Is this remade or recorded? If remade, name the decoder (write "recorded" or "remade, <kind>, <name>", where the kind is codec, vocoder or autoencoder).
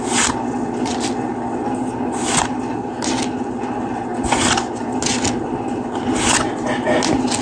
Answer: recorded